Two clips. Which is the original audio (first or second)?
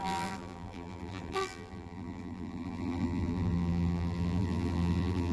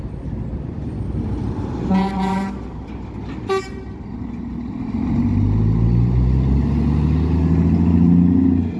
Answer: second